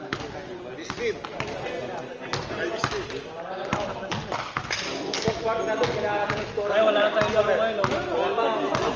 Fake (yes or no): no